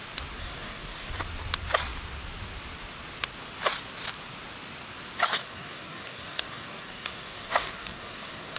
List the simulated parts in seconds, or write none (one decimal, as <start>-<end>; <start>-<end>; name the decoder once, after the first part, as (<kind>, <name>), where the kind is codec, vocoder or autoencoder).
0.4-1.1 (codec, DAC); 5.3-8.6